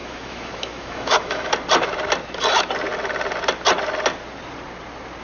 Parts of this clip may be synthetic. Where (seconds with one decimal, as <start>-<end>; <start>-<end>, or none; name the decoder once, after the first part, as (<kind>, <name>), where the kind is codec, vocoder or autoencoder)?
0.0-1.5 (autoencoder, DAC-VAE)